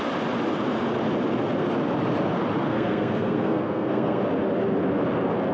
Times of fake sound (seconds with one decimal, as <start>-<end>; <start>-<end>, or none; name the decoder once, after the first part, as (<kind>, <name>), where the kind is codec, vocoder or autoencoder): 2.6-4.2 (codec, SNAC)